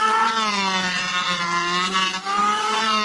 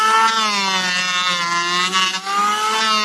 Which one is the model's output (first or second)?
first